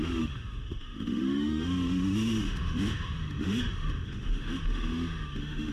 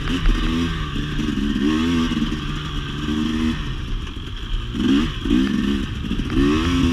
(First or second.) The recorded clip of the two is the second